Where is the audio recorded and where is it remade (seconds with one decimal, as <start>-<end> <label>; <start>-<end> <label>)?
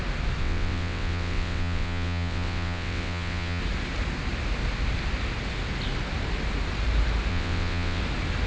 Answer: 0.0-0.4 recorded; 0.4-3.6 remade; 3.6-7.3 recorded; 7.3-8.0 remade; 8.0-8.5 recorded